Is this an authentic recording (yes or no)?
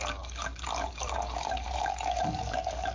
no